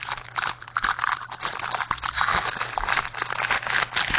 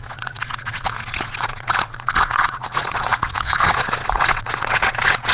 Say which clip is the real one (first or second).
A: first